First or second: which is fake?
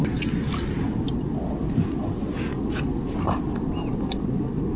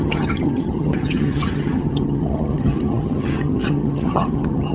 second